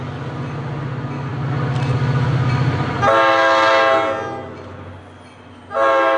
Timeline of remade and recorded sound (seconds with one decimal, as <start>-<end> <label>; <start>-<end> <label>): 0.0-6.2 recorded